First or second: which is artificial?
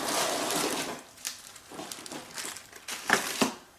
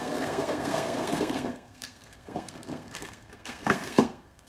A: second